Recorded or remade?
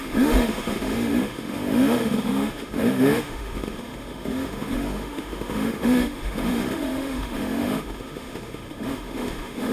remade